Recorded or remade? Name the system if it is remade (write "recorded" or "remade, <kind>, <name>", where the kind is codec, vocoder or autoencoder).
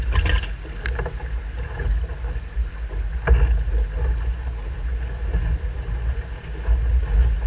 recorded